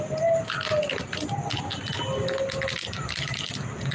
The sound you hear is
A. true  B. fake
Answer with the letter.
A